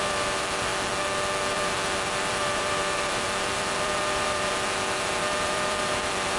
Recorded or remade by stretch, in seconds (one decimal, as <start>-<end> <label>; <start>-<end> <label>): 0.0-0.7 remade; 0.7-1.5 recorded; 1.5-6.4 remade